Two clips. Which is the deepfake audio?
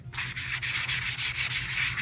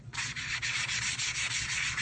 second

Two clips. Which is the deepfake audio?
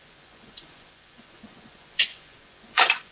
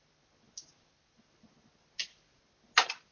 first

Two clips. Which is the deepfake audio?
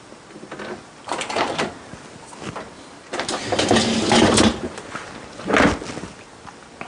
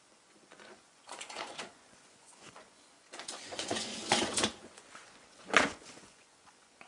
second